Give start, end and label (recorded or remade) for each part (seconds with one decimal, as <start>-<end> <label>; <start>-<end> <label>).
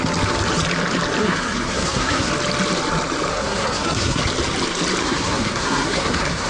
0.0-1.2 recorded; 1.2-2.3 remade; 2.3-3.3 recorded; 3.3-4.2 remade; 4.2-5.0 recorded; 5.0-6.5 remade